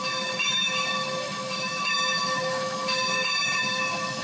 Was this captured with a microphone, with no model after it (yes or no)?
no